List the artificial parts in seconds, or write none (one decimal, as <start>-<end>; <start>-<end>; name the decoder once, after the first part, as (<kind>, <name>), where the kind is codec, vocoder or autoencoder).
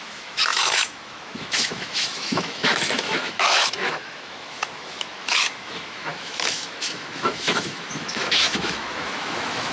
0.0-9.7 (autoencoder, DAC-VAE)